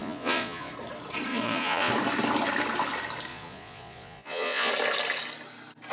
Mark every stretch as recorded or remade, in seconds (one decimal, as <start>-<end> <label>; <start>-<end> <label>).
0.0-0.7 remade; 0.7-1.3 recorded; 1.3-1.9 remade; 1.9-3.3 recorded; 3.3-4.7 remade; 4.7-5.9 recorded